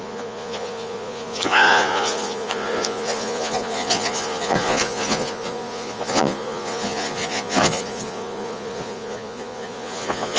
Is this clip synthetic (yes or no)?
yes